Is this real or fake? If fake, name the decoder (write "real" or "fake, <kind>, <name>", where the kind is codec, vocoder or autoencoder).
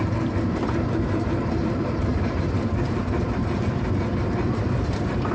fake, vocoder, BigVGAN v2